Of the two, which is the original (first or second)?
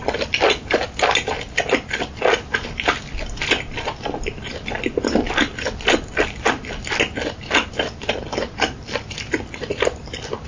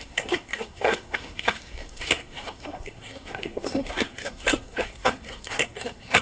first